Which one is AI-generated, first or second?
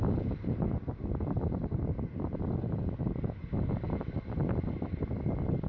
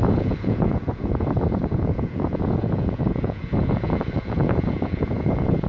second